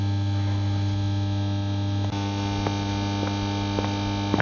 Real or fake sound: real